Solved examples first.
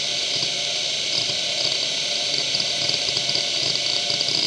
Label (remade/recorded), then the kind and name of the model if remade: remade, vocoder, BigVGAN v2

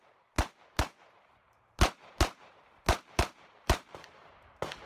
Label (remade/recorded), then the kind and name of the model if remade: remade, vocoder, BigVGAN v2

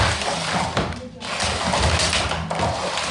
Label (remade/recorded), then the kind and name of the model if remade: recorded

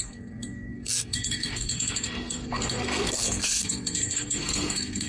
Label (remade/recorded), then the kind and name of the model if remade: remade, codec, SNAC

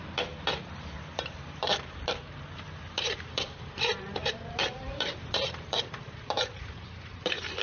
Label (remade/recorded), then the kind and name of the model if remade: remade, vocoder, BigVGAN v2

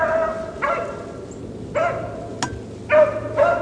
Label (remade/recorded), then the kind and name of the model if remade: recorded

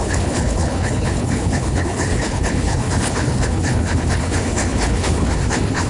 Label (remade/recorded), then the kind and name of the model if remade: remade, codec, HILCodec